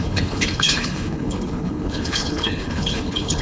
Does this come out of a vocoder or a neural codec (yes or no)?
yes